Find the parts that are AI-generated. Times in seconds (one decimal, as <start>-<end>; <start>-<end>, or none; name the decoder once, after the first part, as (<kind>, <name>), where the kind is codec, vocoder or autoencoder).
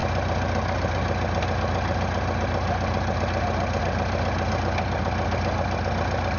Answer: none